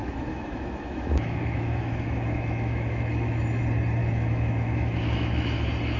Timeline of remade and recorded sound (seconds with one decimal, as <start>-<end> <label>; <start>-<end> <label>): 0.0-3.6 remade; 3.6-4.0 recorded; 4.0-5.6 remade; 5.6-6.0 recorded

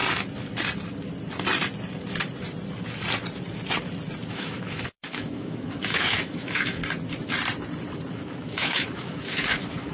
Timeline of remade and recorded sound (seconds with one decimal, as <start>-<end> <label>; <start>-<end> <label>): 0.0-4.3 recorded; 4.3-6.8 remade; 6.8-8.1 recorded; 8.1-9.9 remade

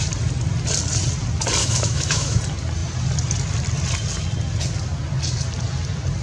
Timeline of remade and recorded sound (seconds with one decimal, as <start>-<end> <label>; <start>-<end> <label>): 0.0-1.6 recorded; 1.6-2.4 remade; 2.4-6.2 recorded

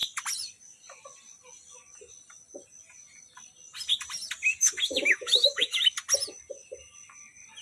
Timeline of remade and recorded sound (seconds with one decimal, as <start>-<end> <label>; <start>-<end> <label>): 0.0-4.6 recorded; 4.6-5.8 remade; 5.8-7.6 recorded

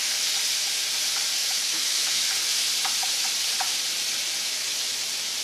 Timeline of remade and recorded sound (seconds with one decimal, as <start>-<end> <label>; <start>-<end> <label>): 0.0-1.4 recorded; 1.4-2.3 remade; 2.3-4.4 recorded; 4.4-5.0 remade; 5.0-5.4 recorded

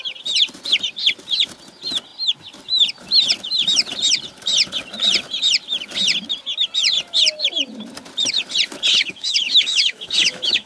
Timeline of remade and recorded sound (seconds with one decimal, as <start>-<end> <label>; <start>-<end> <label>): 0.0-8.9 recorded; 8.9-10.7 remade

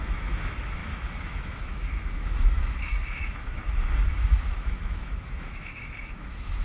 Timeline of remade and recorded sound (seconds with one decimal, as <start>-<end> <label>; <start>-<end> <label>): 0.0-3.6 remade; 3.6-4.2 recorded; 4.2-6.6 remade